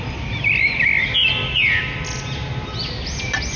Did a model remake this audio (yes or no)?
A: no